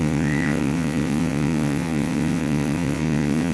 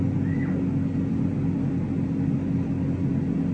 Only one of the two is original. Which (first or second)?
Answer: second